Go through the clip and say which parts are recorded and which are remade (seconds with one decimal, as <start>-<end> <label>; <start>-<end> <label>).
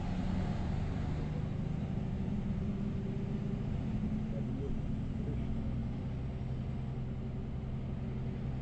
0.0-8.6 recorded